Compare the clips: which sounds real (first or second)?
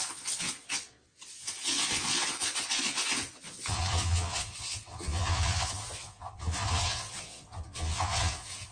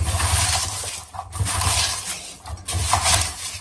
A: second